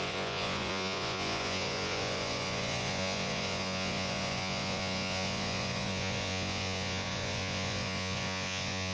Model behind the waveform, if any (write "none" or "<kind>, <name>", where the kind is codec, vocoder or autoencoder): vocoder, Vocos